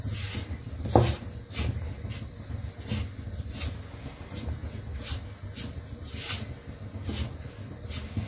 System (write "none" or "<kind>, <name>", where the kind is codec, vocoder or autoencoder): none